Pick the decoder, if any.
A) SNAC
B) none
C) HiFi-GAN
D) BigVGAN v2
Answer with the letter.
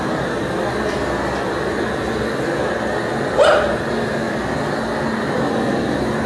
B